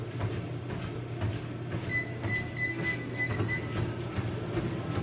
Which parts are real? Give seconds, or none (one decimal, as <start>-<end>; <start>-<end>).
0.0-2.7; 3.5-5.0